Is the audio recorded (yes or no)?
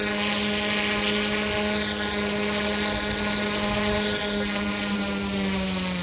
yes